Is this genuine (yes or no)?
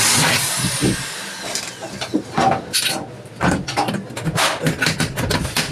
yes